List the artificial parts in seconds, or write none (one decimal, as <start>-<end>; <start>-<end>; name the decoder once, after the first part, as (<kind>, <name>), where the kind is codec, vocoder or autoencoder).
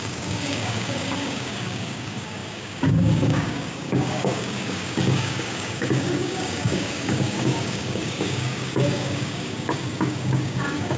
0.0-11.0 (codec, DAC)